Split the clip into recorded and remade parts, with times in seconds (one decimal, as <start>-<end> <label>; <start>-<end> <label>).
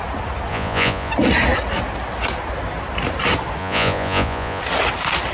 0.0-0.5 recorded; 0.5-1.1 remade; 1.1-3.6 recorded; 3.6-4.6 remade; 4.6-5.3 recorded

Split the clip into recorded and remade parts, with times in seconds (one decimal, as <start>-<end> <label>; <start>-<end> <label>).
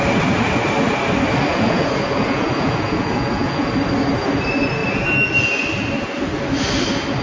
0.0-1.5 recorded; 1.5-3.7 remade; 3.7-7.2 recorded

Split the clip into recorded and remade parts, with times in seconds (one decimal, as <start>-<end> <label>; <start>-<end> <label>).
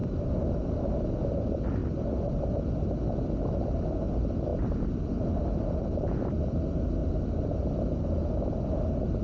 0.0-4.5 recorded; 4.5-5.4 remade; 5.4-7.0 recorded; 7.0-7.7 remade; 7.7-9.2 recorded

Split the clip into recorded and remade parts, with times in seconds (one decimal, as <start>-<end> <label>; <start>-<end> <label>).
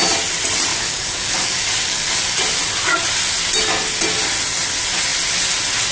0.0-0.7 recorded; 0.7-2.4 remade; 2.4-5.9 recorded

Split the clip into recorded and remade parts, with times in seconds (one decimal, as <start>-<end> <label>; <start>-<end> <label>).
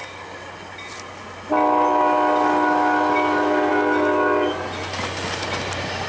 0.0-6.1 recorded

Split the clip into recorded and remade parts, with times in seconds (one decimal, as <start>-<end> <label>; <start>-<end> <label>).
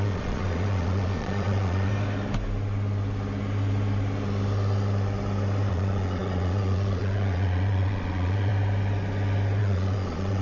0.0-1.9 remade; 1.9-5.7 recorded; 5.7-8.5 remade; 8.5-9.6 recorded; 9.6-10.4 remade